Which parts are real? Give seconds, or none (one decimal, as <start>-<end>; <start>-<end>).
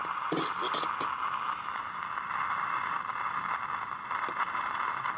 0.0-5.2